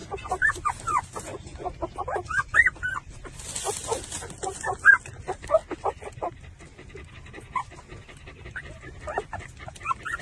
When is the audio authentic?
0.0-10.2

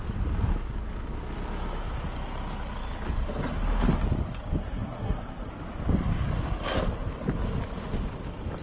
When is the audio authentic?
0.0-4.6; 5.5-8.6

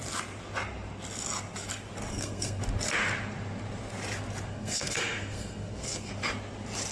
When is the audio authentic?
0.0-2.1; 2.6-4.5; 6.1-6.9